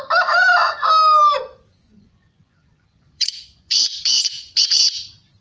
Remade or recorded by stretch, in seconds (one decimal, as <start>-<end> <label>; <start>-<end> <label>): 0.0-1.7 recorded; 1.7-4.9 remade; 4.9-5.4 recorded